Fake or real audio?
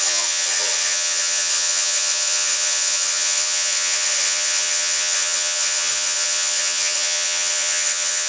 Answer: fake